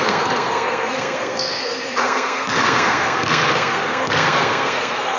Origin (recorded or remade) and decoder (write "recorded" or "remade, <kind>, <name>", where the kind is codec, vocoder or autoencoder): remade, codec, SNAC